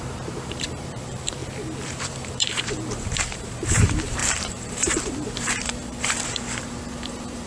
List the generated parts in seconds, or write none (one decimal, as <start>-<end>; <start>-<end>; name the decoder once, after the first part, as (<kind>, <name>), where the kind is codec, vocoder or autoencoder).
0.0-1.4 (vocoder, BigVGAN v2); 2.0-7.5